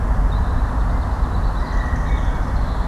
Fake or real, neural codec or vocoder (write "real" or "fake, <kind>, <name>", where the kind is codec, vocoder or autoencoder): real